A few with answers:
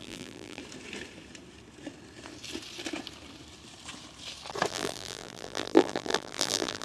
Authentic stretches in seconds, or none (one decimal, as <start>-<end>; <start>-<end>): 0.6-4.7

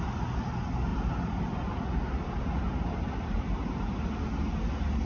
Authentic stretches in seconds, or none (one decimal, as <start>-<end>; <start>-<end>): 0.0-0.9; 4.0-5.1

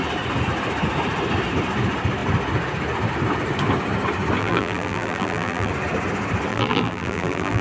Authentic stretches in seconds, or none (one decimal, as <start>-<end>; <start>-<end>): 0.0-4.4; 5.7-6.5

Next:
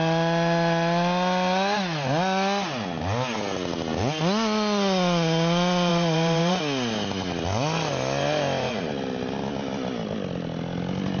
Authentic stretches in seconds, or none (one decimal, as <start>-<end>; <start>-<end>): 0.0-5.9; 6.6-11.2

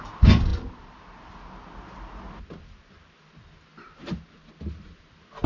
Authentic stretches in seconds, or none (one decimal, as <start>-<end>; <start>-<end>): 0.0-5.5

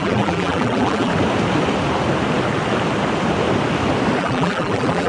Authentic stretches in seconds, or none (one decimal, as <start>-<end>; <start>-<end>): 1.1-4.2

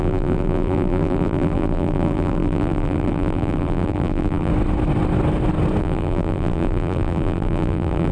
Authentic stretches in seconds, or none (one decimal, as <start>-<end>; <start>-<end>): 4.5-5.8